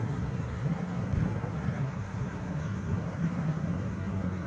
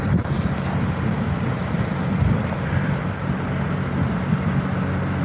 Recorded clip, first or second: second